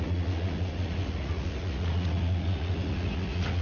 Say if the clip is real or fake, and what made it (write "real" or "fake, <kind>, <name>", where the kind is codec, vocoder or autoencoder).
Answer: fake, vocoder, Vocos